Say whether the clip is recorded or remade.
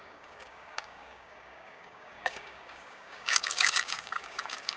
remade